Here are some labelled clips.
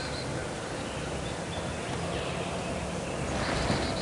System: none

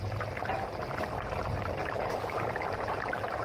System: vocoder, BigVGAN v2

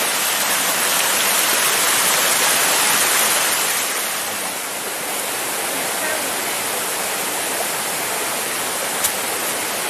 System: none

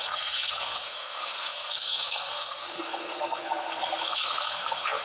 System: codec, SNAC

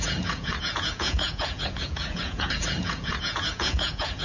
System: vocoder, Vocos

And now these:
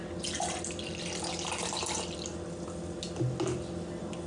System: none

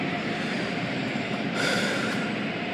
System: vocoder, BigVGAN v2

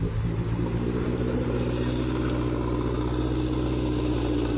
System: none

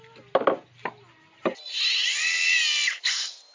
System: none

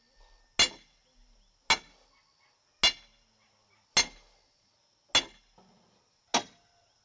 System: none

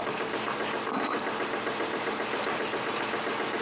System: none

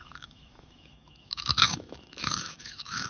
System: autoencoder, DAC-VAE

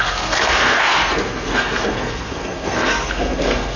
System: codec, SNAC